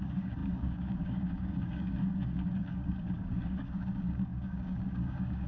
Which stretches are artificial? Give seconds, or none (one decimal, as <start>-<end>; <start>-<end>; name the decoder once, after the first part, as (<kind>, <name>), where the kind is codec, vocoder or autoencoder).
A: 0.0-5.5 (codec, DAC)

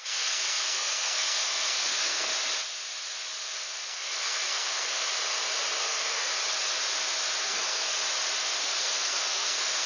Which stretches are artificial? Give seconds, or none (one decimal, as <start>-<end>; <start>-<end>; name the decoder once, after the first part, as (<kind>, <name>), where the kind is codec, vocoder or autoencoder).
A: 0.0-2.3 (codec, SNAC); 3.4-5.1; 5.8-6.3; 7.4-8.0; 8.6-9.9

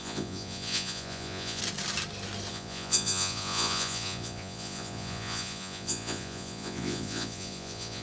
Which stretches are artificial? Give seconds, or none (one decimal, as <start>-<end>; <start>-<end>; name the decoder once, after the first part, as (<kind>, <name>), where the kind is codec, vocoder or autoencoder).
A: 0.0-1.6 (vocoder, Vocos); 2.5-8.0

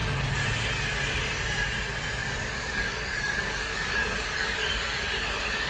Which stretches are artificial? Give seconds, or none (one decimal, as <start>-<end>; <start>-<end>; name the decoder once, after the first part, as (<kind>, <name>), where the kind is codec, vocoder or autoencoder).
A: 2.2-5.7 (codec, DAC)